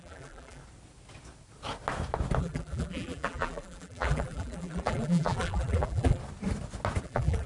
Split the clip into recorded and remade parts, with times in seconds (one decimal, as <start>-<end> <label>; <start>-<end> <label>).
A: 0.0-0.6 remade; 0.6-2.4 recorded; 2.4-6.2 remade; 6.2-7.0 recorded; 7.0-7.5 remade